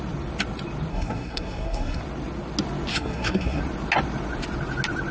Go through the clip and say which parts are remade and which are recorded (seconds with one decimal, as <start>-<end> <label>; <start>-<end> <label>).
0.0-0.9 recorded; 0.9-2.0 remade; 2.0-2.9 recorded; 2.9-3.6 remade; 3.6-5.1 recorded